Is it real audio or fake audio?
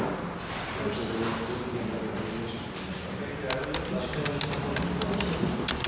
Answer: real